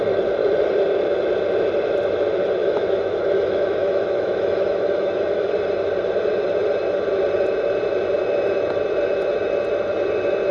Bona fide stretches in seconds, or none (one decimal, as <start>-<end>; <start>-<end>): 0.0-2.6; 5.5-10.5